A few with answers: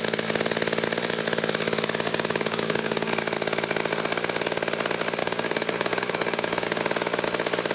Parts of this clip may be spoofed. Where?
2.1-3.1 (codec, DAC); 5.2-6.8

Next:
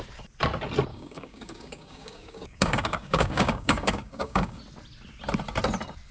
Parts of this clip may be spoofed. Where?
0.9-4.6 (codec, DAC)